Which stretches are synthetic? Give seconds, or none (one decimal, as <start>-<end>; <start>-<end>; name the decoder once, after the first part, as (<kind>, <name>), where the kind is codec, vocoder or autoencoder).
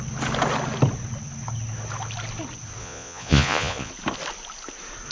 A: 2.8-3.9 (vocoder, Vocos)